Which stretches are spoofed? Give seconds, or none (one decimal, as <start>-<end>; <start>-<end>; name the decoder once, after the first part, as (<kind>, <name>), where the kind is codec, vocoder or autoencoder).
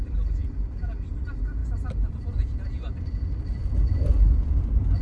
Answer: none